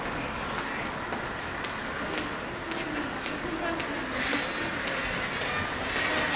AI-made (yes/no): no